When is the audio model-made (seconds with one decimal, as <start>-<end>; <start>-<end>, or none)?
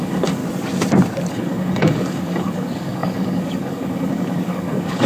0.0-0.4; 1.3-5.1